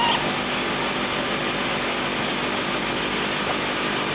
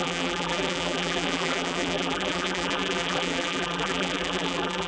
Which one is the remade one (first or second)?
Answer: second